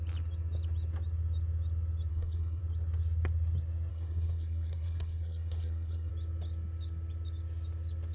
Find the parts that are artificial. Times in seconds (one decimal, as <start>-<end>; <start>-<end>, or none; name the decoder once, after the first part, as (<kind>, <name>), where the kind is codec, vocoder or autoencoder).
2.1-2.6 (codec, SNAC); 3.9-6.1